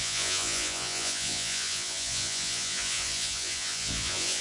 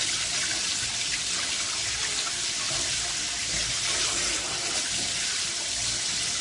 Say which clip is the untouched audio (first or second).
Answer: second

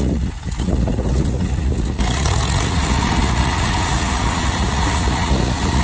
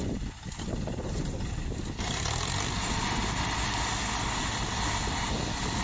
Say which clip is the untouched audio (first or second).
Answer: second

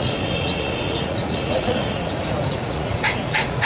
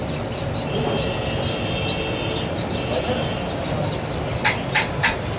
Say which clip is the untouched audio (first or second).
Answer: second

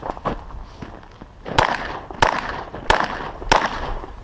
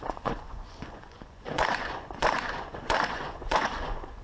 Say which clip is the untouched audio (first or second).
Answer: first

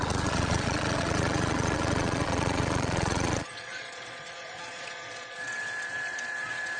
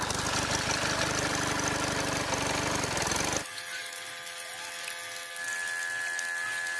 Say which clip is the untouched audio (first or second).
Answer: second